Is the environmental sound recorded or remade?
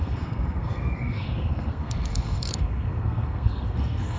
remade